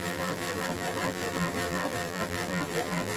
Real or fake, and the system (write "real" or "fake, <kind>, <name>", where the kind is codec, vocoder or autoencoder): fake, vocoder, BigVGAN v2